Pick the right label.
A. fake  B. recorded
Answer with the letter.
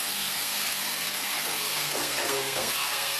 A